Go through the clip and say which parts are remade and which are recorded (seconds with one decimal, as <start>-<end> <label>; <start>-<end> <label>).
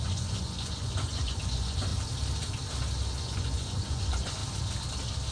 0.0-1.9 remade; 1.9-3.2 recorded; 3.2-4.4 remade; 4.4-5.3 recorded